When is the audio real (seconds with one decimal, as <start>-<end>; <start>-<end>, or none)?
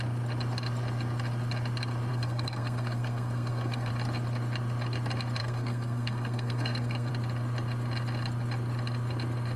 0.0-2.1; 3.9-5.4; 7.1-9.6